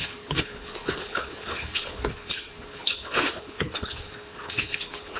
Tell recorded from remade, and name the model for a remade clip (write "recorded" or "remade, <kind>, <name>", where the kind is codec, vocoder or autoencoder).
remade, codec, HILCodec